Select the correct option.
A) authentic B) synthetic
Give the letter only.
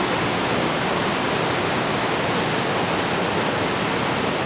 A